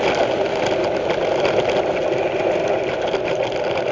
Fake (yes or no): no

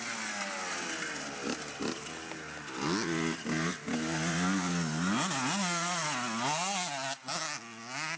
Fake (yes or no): no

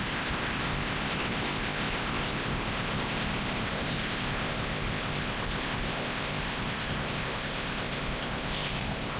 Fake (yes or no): yes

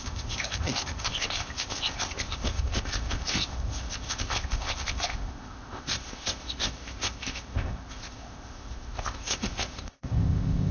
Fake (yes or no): yes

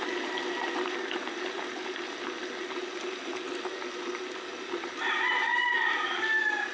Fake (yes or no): no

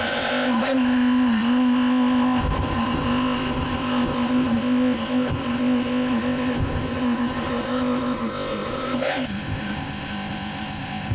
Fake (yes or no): yes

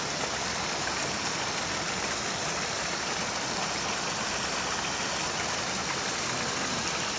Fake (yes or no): no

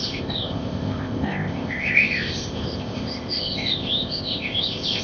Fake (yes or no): yes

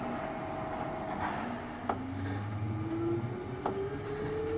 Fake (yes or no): no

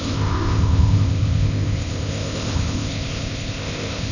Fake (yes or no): yes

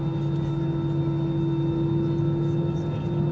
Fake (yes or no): no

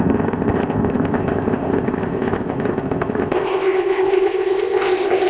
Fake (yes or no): yes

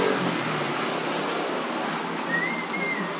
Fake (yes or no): no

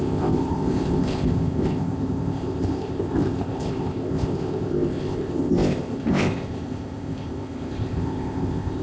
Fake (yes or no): yes